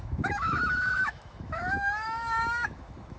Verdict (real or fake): fake